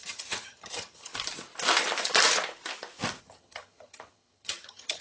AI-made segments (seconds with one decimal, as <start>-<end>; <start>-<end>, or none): 0.0-1.1; 3.2-5.0